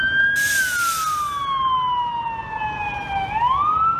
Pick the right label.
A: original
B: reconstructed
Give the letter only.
A